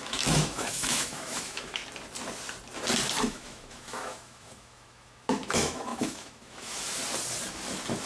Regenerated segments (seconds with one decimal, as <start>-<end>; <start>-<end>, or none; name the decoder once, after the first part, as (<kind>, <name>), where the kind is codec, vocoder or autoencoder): 0.0-1.8 (autoencoder, DAC-VAE); 3.2-7.0